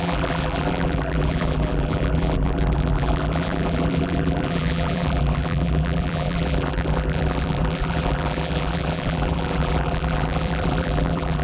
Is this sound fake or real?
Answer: fake